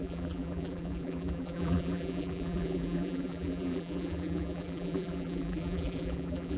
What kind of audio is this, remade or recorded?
remade